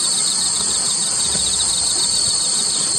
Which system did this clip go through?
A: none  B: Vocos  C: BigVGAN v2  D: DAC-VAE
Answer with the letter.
A